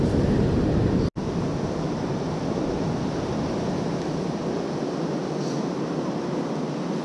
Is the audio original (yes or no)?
yes